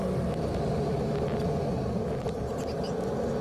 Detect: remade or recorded recorded